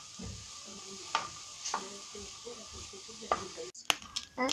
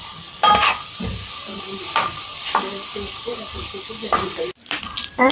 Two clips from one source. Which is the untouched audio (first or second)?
first